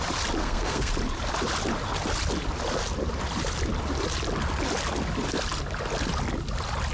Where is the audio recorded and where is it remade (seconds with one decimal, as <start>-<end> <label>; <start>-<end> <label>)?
0.0-0.4 recorded; 0.4-0.9 remade; 0.9-6.9 recorded